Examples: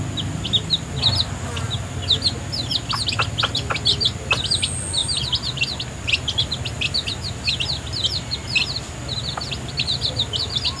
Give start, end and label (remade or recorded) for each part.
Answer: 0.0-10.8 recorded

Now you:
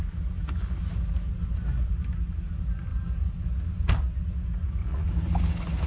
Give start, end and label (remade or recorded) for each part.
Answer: 0.0-5.9 recorded